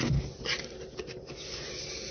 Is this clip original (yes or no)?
yes